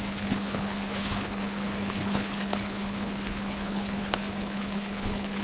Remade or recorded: remade